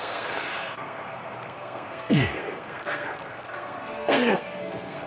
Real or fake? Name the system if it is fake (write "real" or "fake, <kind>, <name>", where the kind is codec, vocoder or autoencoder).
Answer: fake, codec, SNAC